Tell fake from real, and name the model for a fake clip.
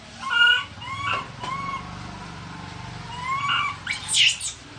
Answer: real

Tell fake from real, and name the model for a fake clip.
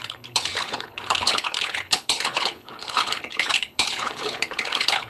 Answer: fake, codec, HILCodec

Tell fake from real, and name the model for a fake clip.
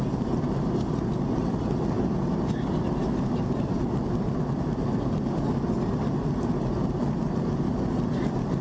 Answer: real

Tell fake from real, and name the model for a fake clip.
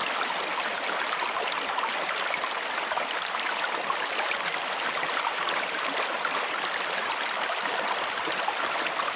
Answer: real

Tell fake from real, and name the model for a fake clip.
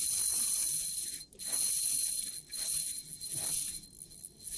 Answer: real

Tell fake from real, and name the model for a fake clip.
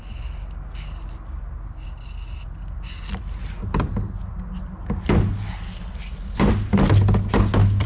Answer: real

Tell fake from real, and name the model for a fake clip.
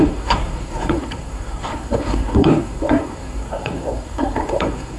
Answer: fake, codec, SNAC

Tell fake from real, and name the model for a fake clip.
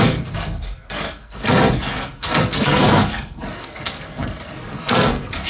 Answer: fake, codec, SNAC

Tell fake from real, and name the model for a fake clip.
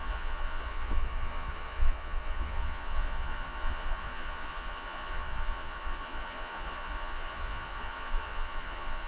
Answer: fake, vocoder, Vocos